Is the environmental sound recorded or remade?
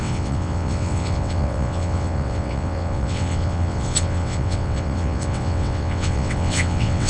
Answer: remade